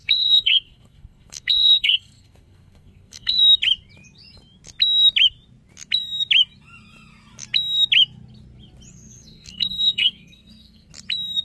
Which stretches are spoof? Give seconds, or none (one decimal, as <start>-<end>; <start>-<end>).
0.0-3.4; 8.9-10.9